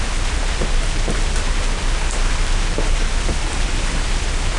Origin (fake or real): fake